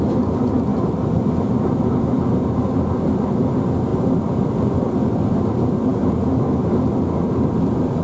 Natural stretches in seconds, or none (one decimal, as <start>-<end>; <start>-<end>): 0.0-8.0